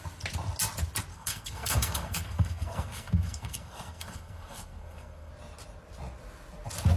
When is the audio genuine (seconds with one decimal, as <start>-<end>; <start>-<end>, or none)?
0.0-1.1; 5.3-7.0